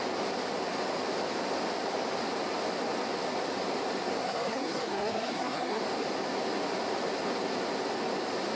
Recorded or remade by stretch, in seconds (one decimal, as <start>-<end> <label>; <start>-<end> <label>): 0.0-4.2 recorded; 4.2-5.8 remade; 5.8-8.6 recorded